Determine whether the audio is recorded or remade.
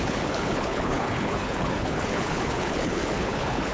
remade